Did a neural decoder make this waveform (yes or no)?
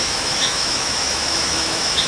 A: yes